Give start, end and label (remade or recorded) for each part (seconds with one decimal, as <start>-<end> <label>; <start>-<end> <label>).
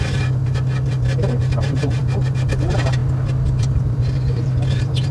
0.0-0.4 remade; 0.4-1.4 recorded; 1.4-3.0 remade; 3.0-3.6 recorded; 3.6-5.1 remade